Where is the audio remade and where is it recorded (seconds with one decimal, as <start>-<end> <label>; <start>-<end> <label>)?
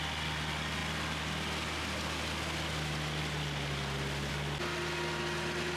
0.0-5.8 recorded